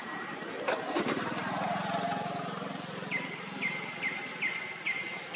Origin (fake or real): real